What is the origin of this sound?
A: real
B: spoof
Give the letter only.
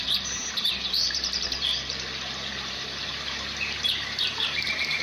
B